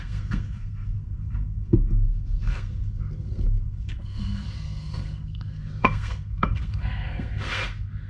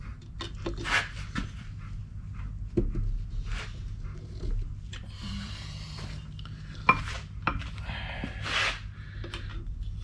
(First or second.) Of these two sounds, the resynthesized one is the first